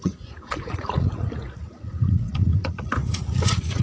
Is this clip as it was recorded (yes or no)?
no